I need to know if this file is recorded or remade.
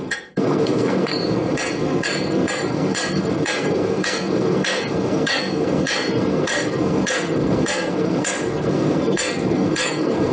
remade